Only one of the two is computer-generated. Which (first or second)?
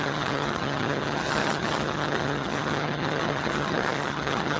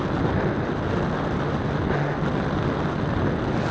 first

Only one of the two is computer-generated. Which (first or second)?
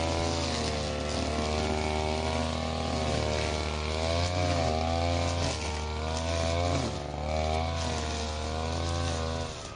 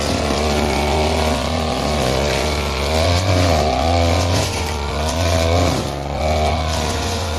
second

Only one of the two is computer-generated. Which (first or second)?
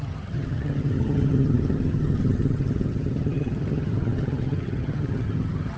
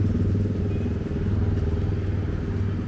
first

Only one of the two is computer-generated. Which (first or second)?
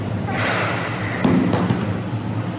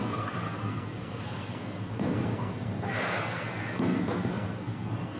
second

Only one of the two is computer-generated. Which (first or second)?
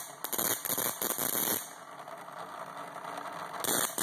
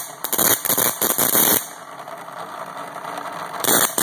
second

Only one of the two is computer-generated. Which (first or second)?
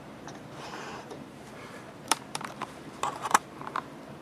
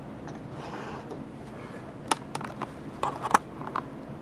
first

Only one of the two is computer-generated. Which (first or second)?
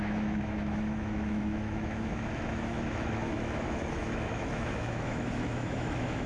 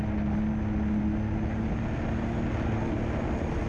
first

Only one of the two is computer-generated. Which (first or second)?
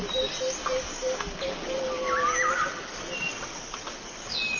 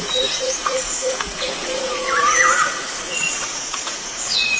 second